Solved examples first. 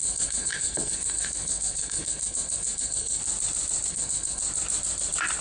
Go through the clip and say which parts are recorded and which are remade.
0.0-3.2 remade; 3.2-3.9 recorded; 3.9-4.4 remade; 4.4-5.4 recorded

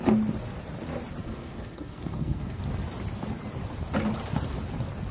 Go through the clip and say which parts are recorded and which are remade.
0.0-1.2 recorded; 1.2-2.6 remade; 2.6-5.1 recorded

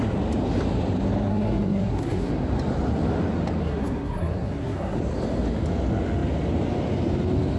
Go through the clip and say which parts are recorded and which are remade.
0.0-1.3 recorded; 1.3-2.3 remade; 2.3-3.6 recorded; 3.6-5.0 remade; 5.0-7.6 recorded